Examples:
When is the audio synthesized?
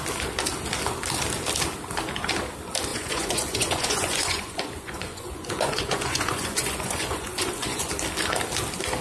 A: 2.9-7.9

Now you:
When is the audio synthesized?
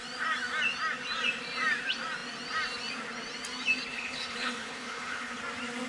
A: 3.9-5.4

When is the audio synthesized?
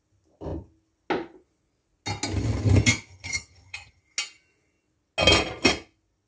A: 3.1-4.0